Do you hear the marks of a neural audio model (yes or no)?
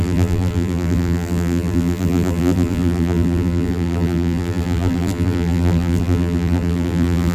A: yes